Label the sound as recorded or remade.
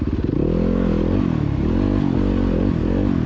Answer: recorded